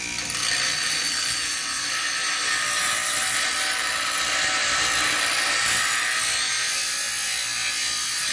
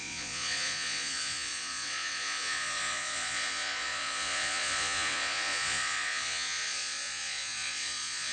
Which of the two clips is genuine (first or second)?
first